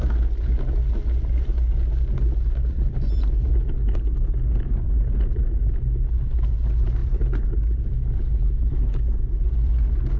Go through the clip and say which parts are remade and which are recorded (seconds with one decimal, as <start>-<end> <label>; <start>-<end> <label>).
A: 0.0-10.2 recorded